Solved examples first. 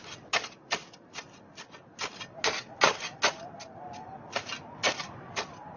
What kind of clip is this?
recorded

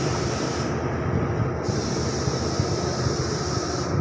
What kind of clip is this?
recorded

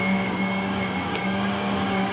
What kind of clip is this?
remade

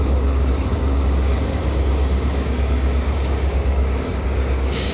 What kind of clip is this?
remade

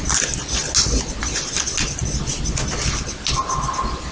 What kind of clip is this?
recorded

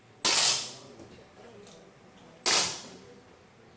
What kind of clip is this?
recorded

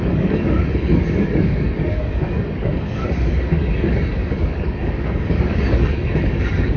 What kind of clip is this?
remade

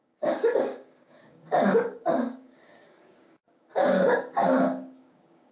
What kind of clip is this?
remade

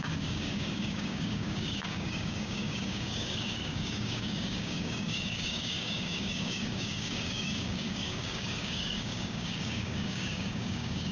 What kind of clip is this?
remade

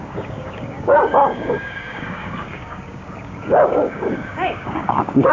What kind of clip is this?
remade